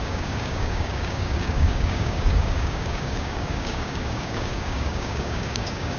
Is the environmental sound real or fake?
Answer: fake